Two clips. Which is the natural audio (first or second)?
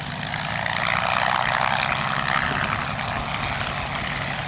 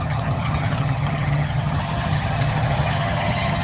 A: first